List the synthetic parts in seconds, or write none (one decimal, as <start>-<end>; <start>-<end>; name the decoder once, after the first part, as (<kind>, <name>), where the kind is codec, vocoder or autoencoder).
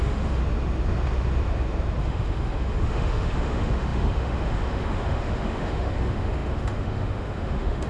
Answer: 0.0-0.4 (autoencoder, DAC-VAE); 2.0-7.9